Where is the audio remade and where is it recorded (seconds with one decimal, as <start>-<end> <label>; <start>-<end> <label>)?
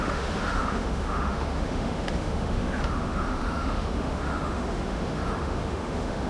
0.0-6.3 remade